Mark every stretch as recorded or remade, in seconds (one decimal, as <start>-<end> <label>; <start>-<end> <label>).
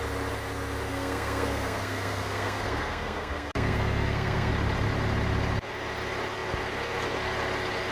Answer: 0.0-0.9 recorded; 0.9-4.5 remade; 4.5-7.9 recorded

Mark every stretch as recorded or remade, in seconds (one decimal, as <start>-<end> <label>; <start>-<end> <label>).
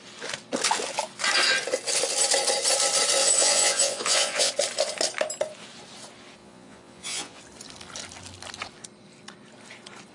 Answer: 0.0-3.2 recorded; 3.2-4.5 remade; 4.5-6.4 recorded; 6.4-7.4 remade; 7.4-10.1 recorded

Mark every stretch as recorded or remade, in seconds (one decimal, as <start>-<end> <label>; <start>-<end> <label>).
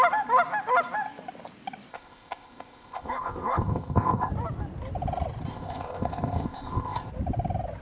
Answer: 0.0-1.9 recorded; 1.9-4.3 remade; 4.3-5.5 recorded; 5.5-7.1 remade; 7.1-7.8 recorded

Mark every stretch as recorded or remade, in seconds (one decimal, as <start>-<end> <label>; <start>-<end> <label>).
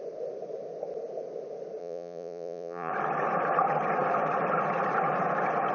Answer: 0.0-1.8 recorded; 1.8-2.9 remade; 2.9-5.7 recorded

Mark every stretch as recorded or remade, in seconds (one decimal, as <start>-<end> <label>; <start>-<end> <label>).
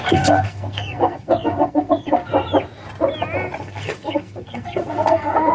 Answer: 0.0-2.3 remade; 2.3-3.6 recorded; 3.6-5.5 remade